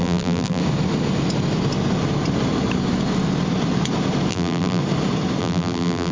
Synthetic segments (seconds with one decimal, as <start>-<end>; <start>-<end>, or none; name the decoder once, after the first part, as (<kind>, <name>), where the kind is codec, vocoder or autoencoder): 0.0-0.6 (vocoder, BigVGAN v2); 4.3-4.8; 5.4-6.1